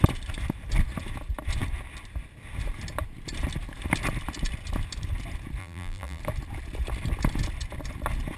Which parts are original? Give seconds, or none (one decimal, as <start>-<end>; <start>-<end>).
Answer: 0.0-5.6; 6.2-8.4